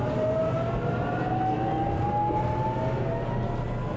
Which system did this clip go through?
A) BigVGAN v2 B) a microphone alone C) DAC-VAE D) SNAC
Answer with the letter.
B